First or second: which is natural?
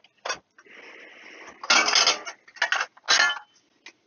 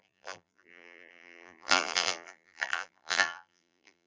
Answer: first